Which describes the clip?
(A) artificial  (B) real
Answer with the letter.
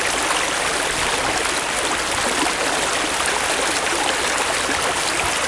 B